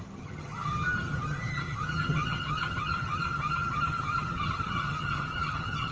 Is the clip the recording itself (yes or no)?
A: no